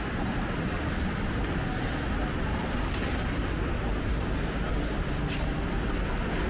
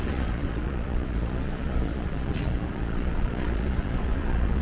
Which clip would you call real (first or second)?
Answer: first